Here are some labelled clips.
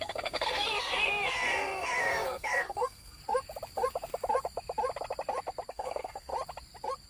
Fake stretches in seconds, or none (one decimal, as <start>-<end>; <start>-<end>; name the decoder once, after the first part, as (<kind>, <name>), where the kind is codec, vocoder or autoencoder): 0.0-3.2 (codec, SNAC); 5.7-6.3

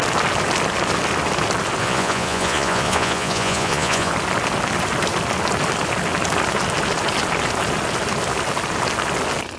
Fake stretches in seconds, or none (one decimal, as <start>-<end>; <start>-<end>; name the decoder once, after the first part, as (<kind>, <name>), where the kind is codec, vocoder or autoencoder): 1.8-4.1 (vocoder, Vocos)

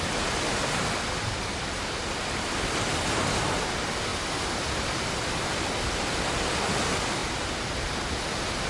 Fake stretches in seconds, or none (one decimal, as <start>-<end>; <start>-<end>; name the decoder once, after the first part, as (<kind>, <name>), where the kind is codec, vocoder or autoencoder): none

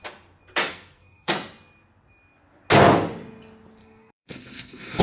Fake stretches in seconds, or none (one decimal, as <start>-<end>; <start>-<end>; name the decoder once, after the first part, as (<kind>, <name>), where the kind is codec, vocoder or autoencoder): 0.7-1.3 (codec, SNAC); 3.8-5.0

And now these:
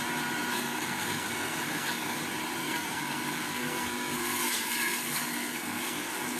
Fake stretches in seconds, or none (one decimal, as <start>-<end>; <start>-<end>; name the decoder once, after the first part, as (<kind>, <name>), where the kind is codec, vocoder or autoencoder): 0.5-2.2 (codec, SNAC); 2.6-6.4

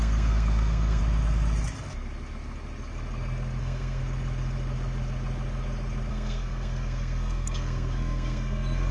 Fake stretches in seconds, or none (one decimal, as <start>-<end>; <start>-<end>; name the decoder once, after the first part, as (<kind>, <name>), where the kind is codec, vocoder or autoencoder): 0.0-1.0 (codec, SNAC); 3.6-4.0; 6.1-8.9